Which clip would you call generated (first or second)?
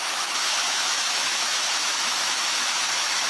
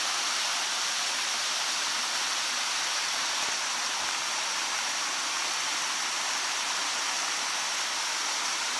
first